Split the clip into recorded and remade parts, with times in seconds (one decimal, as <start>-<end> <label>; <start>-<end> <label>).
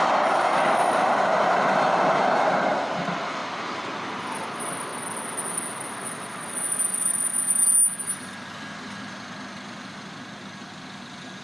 0.0-4.9 recorded; 4.9-5.9 remade; 5.9-11.4 recorded